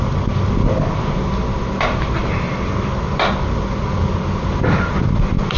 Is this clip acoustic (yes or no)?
yes